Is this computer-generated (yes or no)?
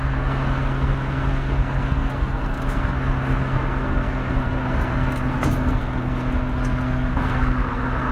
yes